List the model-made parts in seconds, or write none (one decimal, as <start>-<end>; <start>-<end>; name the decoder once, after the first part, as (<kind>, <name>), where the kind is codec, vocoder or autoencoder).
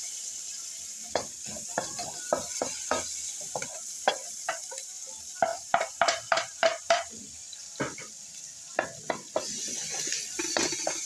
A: 5.5-7.1 (vocoder, BigVGAN v2)